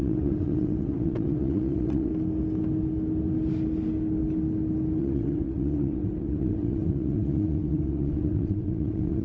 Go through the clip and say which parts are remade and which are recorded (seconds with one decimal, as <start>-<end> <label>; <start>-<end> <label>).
0.0-2.1 remade; 2.1-5.0 recorded; 5.0-9.2 remade

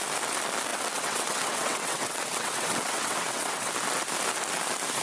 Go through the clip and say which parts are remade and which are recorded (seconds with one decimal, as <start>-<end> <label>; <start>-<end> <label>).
0.0-0.7 recorded; 0.7-3.7 remade; 3.7-5.0 recorded

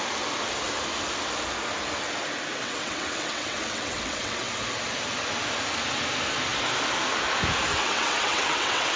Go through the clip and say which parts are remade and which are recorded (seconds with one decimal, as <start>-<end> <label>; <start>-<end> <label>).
0.0-2.6 recorded; 2.6-4.5 remade; 4.5-7.7 recorded; 7.7-9.0 remade

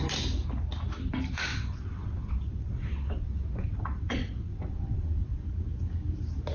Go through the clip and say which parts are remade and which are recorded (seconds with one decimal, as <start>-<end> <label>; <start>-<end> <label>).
0.0-1.5 recorded; 1.5-5.4 remade; 5.4-6.5 recorded

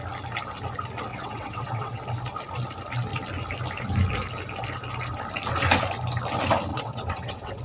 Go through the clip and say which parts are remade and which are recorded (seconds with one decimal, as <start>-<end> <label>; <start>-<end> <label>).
0.0-1.1 recorded; 1.1-2.0 remade; 2.0-6.7 recorded; 6.7-7.6 remade

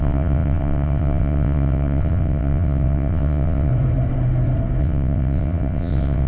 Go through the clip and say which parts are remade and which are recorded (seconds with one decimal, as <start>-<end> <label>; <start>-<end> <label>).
0.0-3.7 remade; 3.7-4.8 recorded; 4.8-6.3 remade

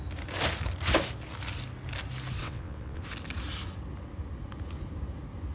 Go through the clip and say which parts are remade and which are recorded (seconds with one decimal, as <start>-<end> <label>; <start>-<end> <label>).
0.0-2.4 recorded; 2.4-3.0 remade; 3.0-5.5 recorded